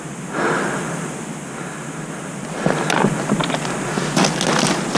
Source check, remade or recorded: recorded